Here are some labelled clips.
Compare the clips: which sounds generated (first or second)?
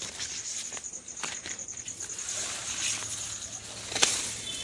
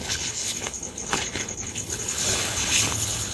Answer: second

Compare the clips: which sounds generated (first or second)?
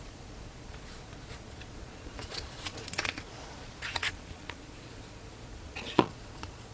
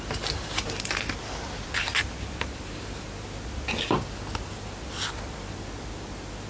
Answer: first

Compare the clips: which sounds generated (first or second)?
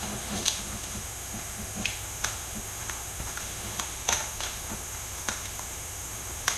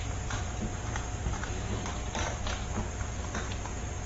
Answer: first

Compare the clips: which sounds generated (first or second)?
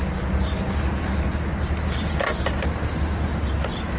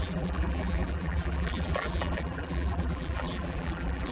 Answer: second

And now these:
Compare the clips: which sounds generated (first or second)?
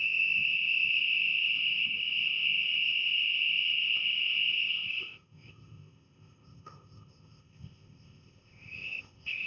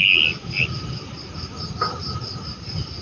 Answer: first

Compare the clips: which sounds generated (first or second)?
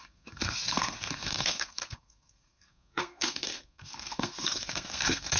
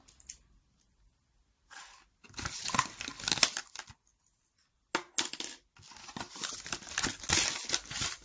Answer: first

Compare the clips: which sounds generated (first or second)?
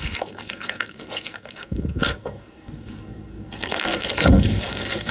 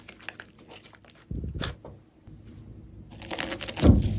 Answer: first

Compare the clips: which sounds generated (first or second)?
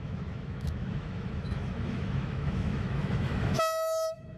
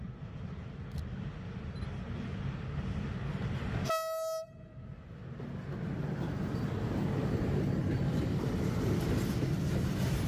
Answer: first